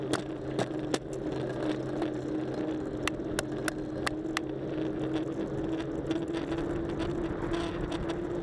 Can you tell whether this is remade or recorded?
recorded